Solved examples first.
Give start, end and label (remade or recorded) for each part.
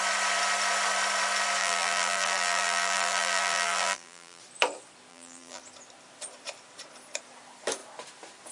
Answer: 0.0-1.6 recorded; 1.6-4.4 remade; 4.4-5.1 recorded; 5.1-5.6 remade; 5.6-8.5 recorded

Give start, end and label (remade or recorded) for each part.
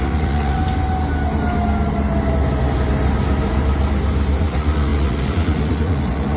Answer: 0.0-0.6 remade; 0.6-4.4 recorded; 4.4-6.4 remade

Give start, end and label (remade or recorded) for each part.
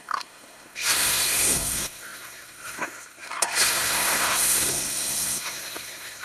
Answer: 0.0-6.2 remade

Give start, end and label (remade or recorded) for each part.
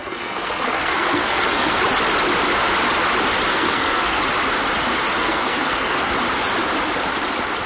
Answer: 0.0-1.8 remade; 1.8-3.5 recorded; 3.5-4.2 remade; 4.2-5.2 recorded; 5.2-6.1 remade; 6.1-7.7 recorded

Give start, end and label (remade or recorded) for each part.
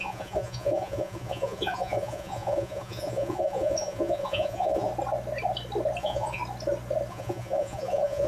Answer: 0.0-4.9 remade; 4.9-6.0 recorded; 6.0-6.4 remade; 6.4-7.1 recorded; 7.1-8.3 remade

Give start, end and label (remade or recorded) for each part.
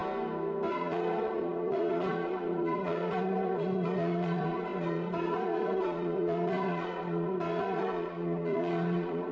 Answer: 0.0-0.7 recorded; 0.7-9.3 remade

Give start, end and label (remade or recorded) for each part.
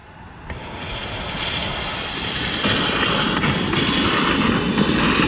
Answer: 0.0-0.6 remade; 0.6-1.6 recorded; 1.6-4.8 remade; 4.8-5.3 recorded